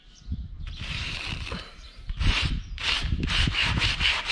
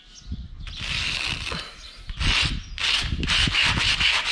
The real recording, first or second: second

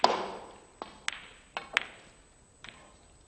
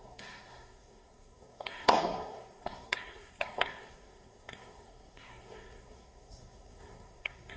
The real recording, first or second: first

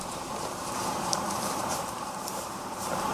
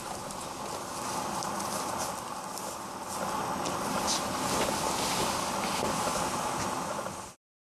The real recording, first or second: second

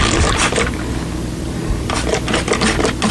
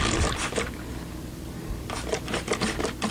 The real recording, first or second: first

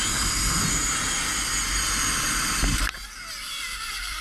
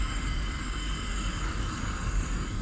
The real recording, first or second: first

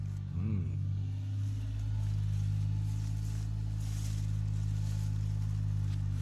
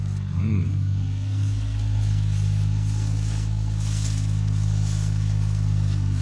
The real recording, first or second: first